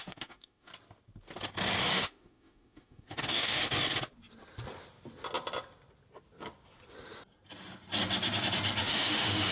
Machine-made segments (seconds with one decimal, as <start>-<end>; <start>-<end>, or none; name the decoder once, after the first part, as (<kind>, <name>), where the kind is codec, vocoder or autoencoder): 0.0-0.7 (autoencoder, DAC-VAE); 1.8-3.6; 8.8-9.5